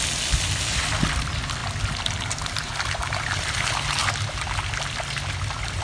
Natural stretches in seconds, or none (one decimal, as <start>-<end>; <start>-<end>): 0.0-5.8